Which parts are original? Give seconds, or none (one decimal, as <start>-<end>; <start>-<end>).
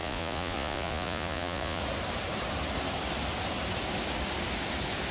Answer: 1.8-5.1